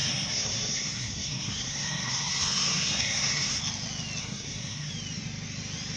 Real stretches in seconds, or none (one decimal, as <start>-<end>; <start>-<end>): 3.6-4.2; 4.9-6.0